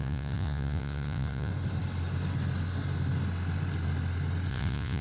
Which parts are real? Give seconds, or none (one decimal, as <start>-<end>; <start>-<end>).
1.5-4.5